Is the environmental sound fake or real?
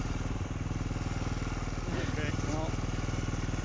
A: real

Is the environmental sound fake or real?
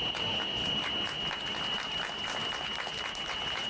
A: real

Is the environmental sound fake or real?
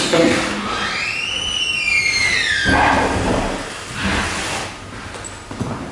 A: real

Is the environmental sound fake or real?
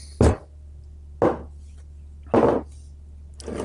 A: real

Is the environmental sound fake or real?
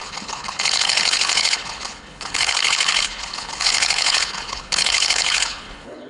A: fake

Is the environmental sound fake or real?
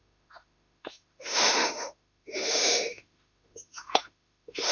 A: fake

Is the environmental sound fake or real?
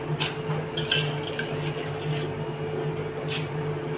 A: real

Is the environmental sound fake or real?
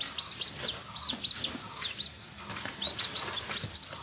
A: real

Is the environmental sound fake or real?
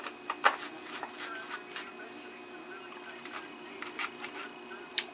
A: real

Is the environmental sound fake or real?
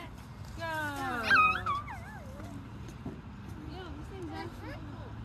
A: real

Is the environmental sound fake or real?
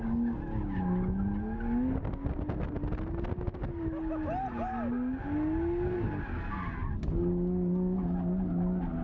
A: real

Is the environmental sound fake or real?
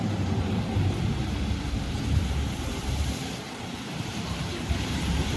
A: fake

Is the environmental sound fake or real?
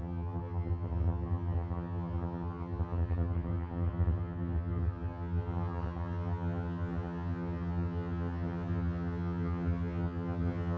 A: fake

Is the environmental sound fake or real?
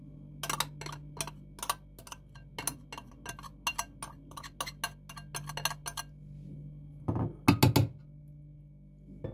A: real